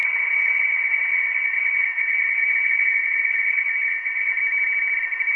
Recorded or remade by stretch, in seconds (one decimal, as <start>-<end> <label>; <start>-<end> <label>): 0.0-4.3 remade; 4.3-5.4 recorded